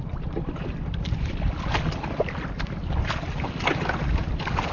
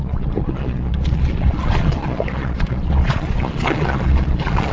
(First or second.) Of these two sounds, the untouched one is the first